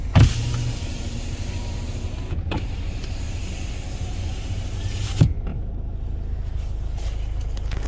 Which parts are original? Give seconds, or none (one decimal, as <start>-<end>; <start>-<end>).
2.7-7.9